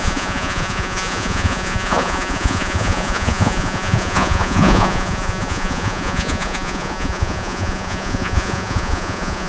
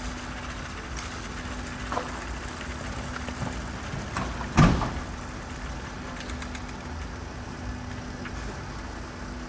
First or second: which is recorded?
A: second